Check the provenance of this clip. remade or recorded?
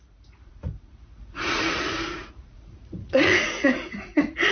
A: remade